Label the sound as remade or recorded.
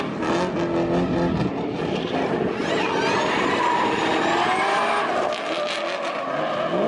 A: recorded